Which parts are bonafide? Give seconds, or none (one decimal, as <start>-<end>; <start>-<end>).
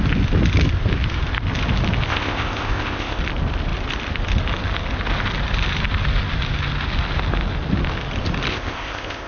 0.0-2.1; 3.2-8.5